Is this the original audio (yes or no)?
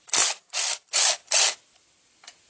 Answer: yes